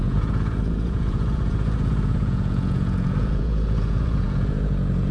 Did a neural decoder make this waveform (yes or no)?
yes